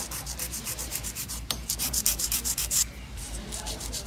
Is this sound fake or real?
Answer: fake